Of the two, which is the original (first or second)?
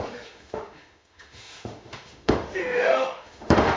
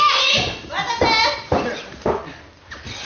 second